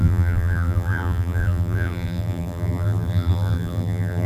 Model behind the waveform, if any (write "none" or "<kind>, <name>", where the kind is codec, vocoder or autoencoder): vocoder, BigVGAN v2